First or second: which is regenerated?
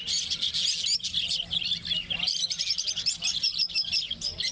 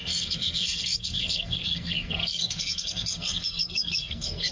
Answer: second